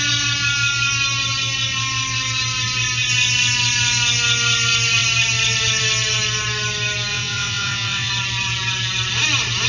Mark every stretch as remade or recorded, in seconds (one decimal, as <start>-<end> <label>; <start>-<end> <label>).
0.0-7.1 recorded; 7.1-8.1 remade; 8.1-9.7 recorded

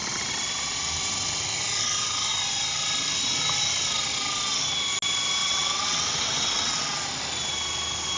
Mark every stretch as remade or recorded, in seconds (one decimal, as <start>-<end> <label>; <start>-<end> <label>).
0.0-5.4 recorded; 5.4-6.8 remade; 6.8-8.2 recorded

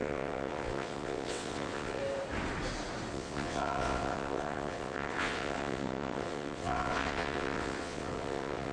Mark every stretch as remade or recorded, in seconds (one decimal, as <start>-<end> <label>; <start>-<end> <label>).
0.0-2.0 remade; 2.0-3.1 recorded; 3.1-8.7 remade

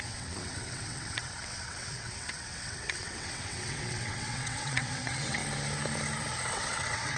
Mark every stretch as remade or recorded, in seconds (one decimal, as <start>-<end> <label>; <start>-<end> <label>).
0.0-5.4 remade; 5.4-6.5 recorded; 6.5-7.2 remade